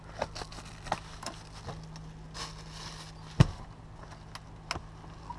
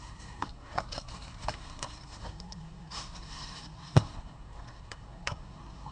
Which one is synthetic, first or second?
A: second